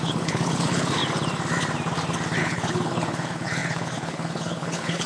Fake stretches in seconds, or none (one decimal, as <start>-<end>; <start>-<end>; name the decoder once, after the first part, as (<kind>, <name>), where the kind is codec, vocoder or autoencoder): 0.0-1.0 (codec, HILCodec); 2.4-5.1

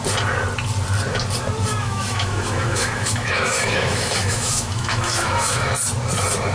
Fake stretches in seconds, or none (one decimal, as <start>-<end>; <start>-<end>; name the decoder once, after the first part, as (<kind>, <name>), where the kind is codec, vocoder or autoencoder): 1.8-5.7 (autoencoder, DAC-VAE)

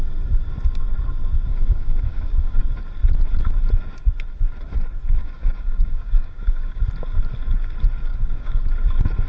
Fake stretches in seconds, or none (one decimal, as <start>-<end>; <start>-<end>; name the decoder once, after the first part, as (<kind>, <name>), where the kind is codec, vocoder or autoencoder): 1.5-2.6 (codec, DAC); 5.2-6.8; 8.1-8.6

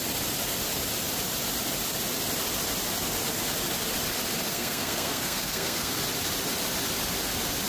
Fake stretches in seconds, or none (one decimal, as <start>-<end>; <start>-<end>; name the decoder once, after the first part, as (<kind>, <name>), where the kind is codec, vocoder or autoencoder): 4.5-5.9 (codec, SNAC)

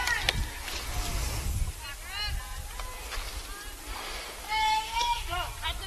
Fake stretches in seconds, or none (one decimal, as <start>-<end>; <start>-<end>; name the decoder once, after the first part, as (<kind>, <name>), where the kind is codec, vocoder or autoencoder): 4.4-5.5 (autoencoder, DAC-VAE)

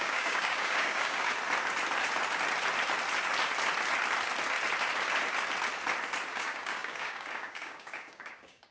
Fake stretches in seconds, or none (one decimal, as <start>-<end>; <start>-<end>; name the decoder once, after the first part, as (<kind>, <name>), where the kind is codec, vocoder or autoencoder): 0.0-1.3 (codec, DAC); 6.3-8.7

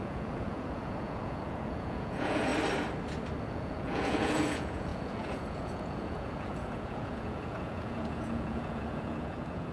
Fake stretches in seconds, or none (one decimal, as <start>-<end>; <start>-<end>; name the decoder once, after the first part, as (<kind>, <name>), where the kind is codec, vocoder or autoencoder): 0.0-2.5 (vocoder, Vocos); 3.5-9.7

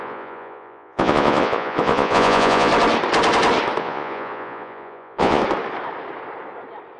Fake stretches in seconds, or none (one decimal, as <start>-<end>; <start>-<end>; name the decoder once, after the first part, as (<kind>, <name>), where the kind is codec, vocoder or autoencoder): 0.0-2.7 (vocoder, Vocos); 3.8-5.4